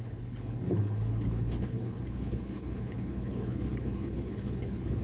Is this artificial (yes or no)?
yes